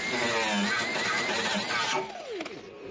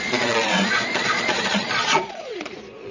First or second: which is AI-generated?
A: second